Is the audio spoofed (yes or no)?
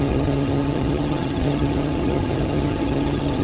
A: yes